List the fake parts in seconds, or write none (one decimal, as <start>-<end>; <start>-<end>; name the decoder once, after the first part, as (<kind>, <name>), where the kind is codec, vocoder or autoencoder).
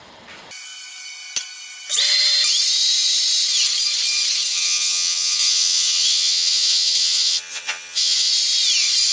4.5-8.3 (vocoder, HiFi-GAN)